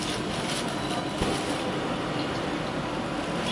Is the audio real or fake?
real